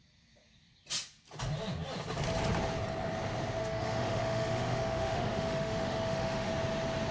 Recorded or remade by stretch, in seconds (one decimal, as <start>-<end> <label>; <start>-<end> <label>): 0.0-3.6 recorded; 3.6-6.5 remade; 6.5-7.1 recorded